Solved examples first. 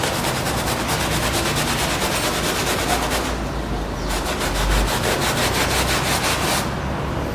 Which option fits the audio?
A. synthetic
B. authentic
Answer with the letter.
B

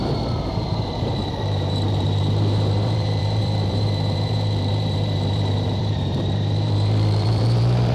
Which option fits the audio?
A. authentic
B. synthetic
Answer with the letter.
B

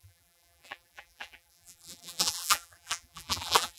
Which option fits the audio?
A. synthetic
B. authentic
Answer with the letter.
A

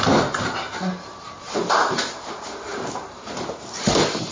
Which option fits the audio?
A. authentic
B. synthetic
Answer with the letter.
B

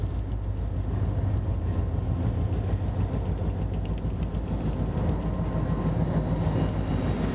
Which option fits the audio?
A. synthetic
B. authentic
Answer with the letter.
B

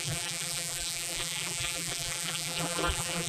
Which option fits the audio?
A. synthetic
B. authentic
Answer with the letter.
A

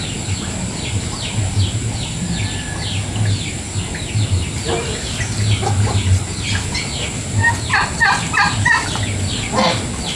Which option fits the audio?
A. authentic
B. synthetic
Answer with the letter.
A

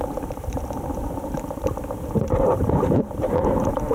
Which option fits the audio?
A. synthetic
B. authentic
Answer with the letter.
A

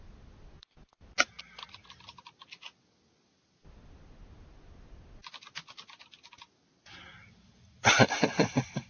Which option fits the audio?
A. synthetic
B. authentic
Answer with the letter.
B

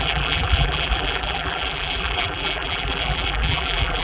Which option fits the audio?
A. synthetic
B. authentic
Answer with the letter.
A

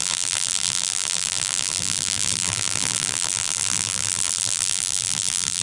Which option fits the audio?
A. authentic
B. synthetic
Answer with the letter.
B